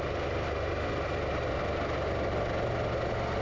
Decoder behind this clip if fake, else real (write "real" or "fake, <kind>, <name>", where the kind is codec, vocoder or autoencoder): real